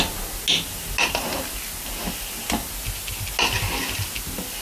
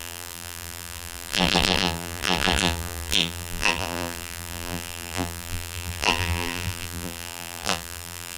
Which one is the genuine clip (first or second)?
first